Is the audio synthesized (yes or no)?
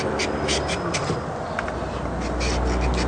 no